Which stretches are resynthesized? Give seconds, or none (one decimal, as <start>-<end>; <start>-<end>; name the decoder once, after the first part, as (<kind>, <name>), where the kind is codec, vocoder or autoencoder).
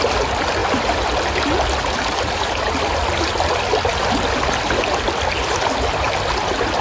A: none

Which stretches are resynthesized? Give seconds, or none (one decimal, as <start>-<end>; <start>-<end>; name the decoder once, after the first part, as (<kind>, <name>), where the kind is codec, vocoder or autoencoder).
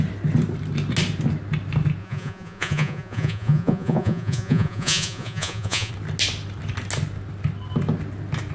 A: 2.0-5.9 (vocoder, Vocos)